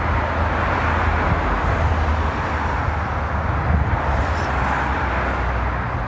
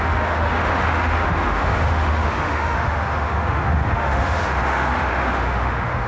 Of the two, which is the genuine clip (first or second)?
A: first